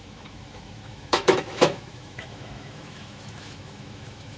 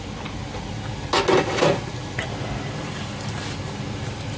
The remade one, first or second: first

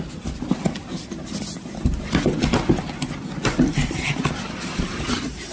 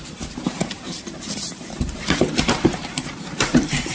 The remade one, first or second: second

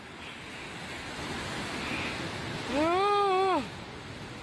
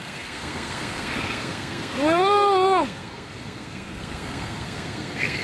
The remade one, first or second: second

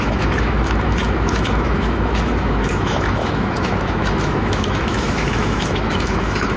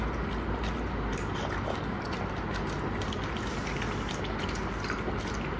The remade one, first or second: first